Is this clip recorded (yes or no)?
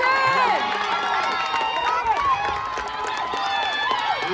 yes